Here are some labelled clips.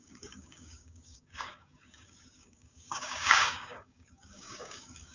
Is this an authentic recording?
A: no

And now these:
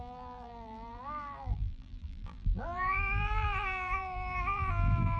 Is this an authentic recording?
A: no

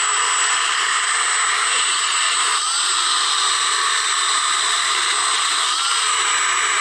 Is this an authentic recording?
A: yes